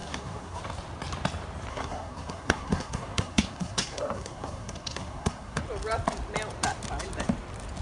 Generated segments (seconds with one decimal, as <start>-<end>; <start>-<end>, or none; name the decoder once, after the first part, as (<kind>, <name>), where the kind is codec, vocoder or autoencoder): 0.0-0.6 (codec, SNAC); 1.7-5.6